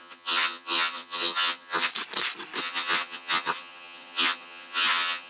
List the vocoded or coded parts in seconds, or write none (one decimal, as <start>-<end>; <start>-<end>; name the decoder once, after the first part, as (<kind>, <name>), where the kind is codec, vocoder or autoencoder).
0.0-1.9 (vocoder, HiFi-GAN); 2.6-5.3